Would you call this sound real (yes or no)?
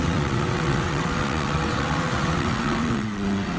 no